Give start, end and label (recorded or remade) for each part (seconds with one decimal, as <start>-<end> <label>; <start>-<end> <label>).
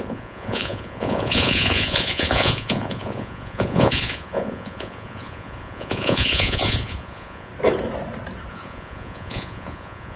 0.0-7.5 remade; 7.5-8.5 recorded; 8.5-10.2 remade